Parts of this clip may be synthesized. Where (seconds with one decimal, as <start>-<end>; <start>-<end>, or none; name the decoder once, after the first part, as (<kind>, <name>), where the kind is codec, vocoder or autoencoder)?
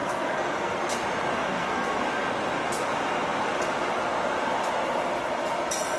0.0-0.8 (codec, SNAC); 1.4-2.0